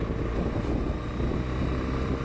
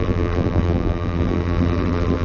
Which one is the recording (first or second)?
first